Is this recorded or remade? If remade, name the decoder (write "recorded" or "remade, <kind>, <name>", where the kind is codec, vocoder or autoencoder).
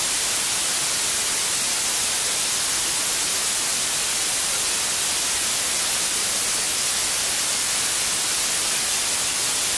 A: recorded